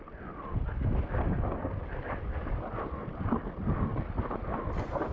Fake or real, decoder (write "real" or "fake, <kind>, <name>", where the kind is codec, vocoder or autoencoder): real